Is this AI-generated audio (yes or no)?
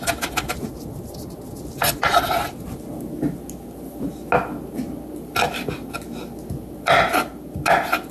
no